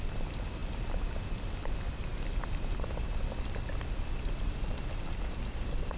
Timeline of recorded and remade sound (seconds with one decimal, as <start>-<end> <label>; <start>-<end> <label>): 0.0-6.0 recorded